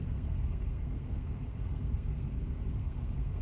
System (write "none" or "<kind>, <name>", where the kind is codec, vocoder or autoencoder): codec, SNAC